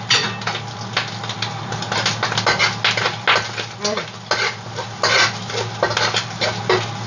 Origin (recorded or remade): recorded